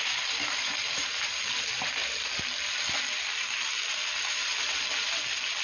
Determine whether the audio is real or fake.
real